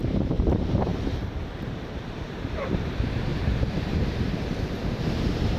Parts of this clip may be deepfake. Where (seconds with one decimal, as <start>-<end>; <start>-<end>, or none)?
0.0-5.6